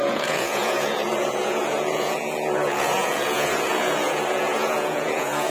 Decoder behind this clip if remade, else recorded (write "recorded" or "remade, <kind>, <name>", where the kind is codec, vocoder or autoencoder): remade, vocoder, Vocos